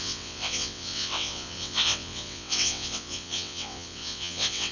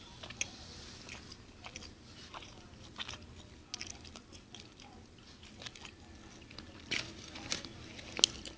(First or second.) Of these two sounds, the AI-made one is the first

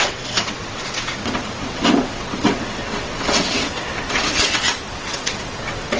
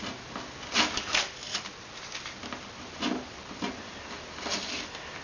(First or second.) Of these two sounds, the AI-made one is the first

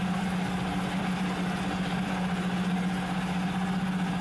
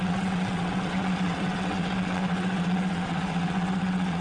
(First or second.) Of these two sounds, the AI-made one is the second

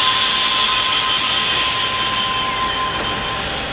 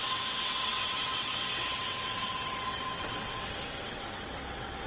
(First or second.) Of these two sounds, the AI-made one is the second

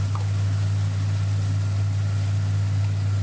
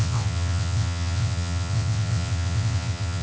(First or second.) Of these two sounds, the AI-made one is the second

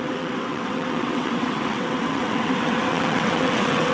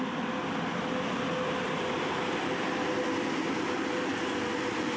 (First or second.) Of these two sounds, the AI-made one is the first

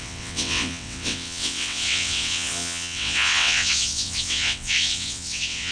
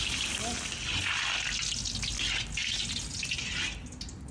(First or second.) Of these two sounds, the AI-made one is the first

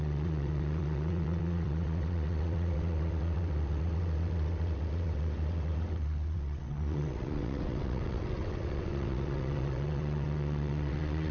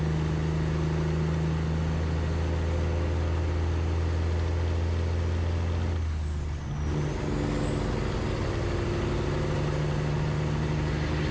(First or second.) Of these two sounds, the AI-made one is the first